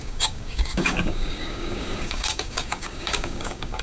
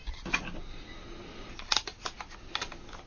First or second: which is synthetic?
first